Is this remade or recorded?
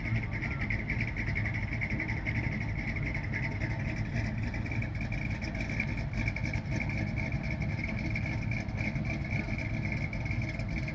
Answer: recorded